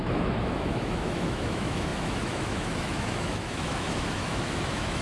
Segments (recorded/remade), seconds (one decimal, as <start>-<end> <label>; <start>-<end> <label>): 0.0-5.0 remade